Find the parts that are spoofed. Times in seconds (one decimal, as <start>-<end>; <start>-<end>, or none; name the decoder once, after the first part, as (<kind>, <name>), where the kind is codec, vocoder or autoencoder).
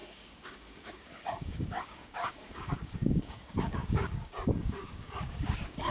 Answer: 0.0-5.9 (codec, DAC)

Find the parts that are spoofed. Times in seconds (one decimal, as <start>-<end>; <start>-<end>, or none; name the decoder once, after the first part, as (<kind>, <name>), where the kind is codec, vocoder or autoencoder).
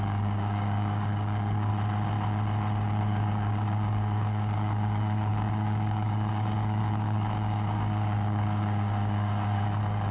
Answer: 0.0-1.7 (codec, DAC); 3.0-10.1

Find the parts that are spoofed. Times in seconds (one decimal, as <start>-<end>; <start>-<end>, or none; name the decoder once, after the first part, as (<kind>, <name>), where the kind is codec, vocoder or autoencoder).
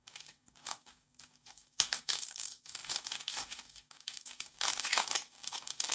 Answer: 0.0-5.9 (codec, DAC)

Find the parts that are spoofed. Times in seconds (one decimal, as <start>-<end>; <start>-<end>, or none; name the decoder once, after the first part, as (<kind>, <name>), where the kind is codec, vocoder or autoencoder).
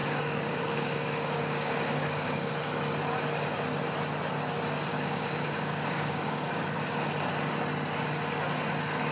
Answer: 0.0-2.5 (codec, DAC); 4.9-6.5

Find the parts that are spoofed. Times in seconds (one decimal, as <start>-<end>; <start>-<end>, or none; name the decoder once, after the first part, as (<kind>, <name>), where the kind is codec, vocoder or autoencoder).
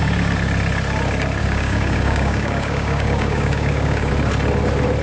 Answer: 1.4-4.1 (codec, DAC)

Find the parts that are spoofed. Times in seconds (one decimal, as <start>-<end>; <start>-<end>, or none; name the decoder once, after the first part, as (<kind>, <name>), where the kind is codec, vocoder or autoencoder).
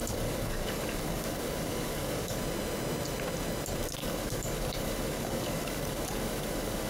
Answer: 0.0-2.4 (codec, DAC); 4.0-6.9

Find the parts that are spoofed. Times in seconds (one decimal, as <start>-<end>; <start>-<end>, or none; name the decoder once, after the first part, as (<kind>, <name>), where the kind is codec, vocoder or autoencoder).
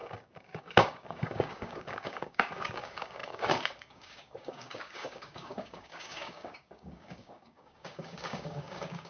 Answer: 0.0-9.1 (codec, DAC)